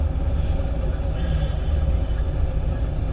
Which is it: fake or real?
real